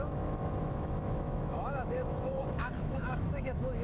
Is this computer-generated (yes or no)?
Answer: yes